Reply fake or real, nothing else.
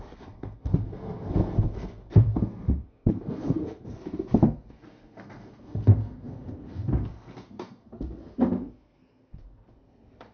fake